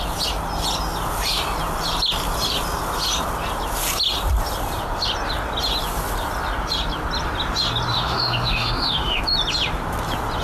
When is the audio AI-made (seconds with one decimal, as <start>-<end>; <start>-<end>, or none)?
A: 7.9-9.2